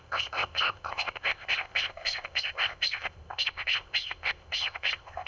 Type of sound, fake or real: fake